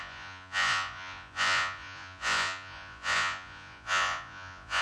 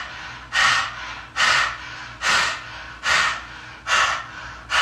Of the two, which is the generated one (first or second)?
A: first